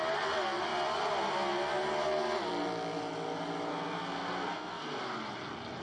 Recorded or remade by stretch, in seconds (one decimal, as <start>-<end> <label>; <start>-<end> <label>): 0.0-3.7 recorded; 3.7-5.0 remade; 5.0-5.8 recorded